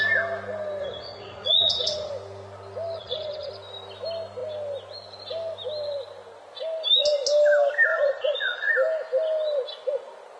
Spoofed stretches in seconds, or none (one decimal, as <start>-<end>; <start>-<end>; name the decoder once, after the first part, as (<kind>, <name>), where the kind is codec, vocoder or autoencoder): 0.8-2.1 (vocoder, Vocos); 3.0-3.5; 7.9-8.7